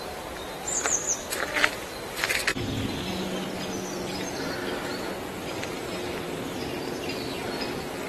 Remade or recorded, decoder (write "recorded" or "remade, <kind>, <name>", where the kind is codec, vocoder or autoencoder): remade, vocoder, BigVGAN v2